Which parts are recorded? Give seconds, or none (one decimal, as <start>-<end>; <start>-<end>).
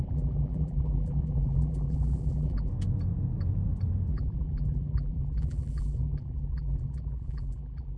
2.7-4.1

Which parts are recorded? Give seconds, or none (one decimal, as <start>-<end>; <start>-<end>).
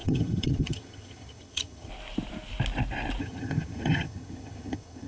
1.9-3.2